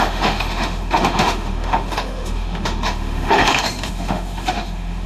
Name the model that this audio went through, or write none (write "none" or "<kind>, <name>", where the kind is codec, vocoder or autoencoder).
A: autoencoder, DAC-VAE